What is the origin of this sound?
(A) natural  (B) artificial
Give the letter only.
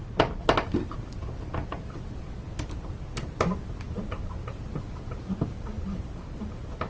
A